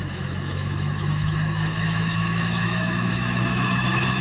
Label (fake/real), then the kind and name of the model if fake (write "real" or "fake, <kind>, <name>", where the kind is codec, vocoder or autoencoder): fake, autoencoder, DAC-VAE